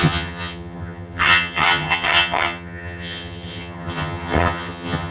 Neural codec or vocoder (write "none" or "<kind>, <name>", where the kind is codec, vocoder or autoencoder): vocoder, HiFi-GAN